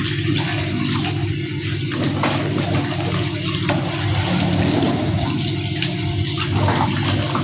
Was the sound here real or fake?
real